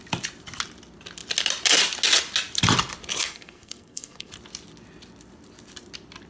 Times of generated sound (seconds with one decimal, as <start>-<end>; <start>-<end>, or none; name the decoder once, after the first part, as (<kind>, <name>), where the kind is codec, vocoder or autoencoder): 3.2-4.3 (codec, SNAC)